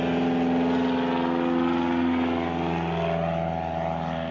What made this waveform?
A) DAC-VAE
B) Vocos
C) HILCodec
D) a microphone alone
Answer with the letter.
D